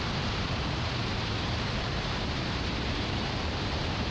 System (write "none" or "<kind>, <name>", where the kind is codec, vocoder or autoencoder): vocoder, BigVGAN v2